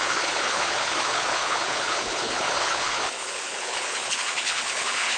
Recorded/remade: remade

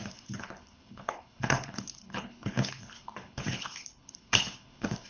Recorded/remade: remade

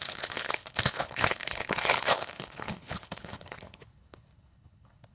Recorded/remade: remade